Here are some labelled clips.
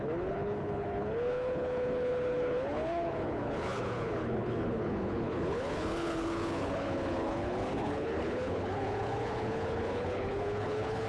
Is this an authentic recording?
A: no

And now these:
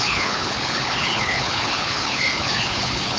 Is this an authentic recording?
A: no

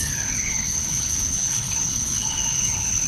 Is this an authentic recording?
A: no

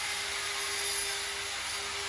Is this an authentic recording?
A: yes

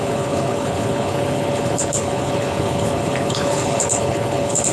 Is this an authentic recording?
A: no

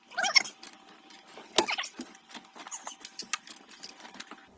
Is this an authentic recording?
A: yes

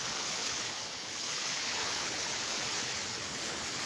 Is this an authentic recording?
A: no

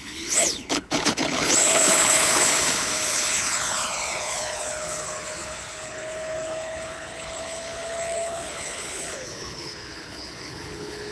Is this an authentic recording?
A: no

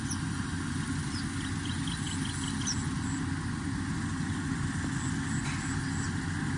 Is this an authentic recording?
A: yes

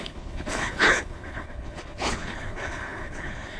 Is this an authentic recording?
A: no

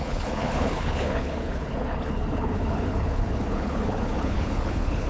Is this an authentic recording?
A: no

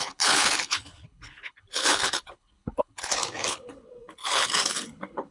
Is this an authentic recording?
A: no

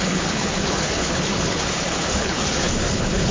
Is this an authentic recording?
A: no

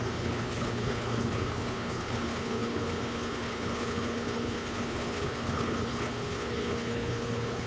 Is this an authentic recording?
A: no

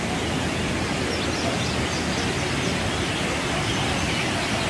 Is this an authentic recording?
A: yes